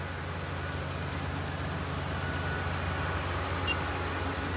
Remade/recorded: recorded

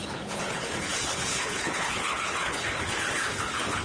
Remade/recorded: remade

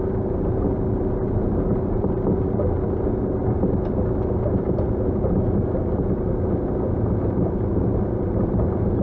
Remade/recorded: recorded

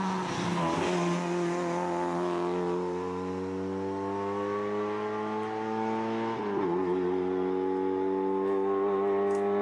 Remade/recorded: recorded